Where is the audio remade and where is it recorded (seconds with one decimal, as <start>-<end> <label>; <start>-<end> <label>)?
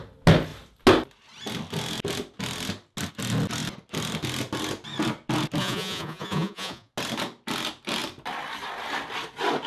0.0-5.6 recorded; 5.6-6.9 remade; 6.9-9.7 recorded